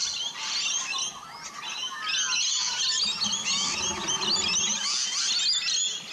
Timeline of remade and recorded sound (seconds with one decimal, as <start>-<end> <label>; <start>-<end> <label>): 0.0-6.1 recorded